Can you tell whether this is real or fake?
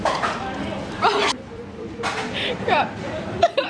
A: fake